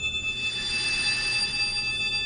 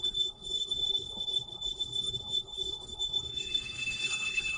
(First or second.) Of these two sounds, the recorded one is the first